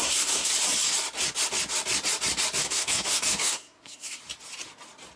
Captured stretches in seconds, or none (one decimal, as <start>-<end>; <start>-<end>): 0.5-2.6; 4.2-5.2